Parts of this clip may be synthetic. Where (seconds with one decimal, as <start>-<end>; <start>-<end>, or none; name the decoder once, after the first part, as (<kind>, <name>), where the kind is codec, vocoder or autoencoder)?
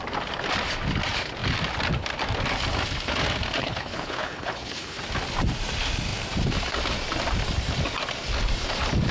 3.6-5.0 (codec, HILCodec)